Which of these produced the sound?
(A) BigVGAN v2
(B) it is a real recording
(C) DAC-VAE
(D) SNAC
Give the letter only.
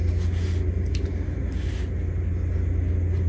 B